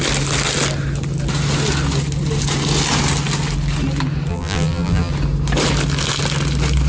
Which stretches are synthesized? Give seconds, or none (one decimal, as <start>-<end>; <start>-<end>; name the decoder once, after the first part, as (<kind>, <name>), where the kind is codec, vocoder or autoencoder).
4.3-5.1 (vocoder, BigVGAN v2)